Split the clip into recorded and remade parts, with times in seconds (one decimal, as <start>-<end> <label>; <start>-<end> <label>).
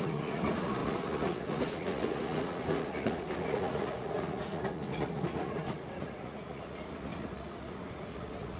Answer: 0.0-8.6 remade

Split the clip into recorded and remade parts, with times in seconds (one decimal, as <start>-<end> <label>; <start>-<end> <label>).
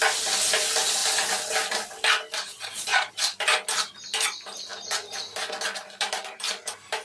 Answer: 0.0-2.5 recorded; 2.5-3.1 remade; 3.1-7.0 recorded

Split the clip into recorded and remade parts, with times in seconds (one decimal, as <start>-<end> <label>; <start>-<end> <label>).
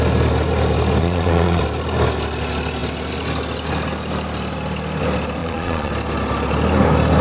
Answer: 0.0-1.0 recorded; 1.0-1.6 remade; 1.6-5.4 recorded; 5.4-5.9 remade; 5.9-7.2 recorded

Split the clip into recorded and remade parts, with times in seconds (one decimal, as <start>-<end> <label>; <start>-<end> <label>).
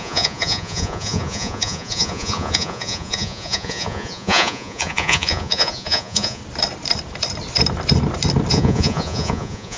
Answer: 0.0-6.4 remade; 6.4-8.5 recorded; 8.5-9.8 remade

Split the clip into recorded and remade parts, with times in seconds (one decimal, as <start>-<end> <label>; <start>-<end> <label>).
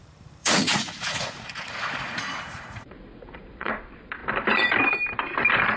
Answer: 0.0-0.4 recorded; 0.4-3.7 remade; 3.7-5.8 recorded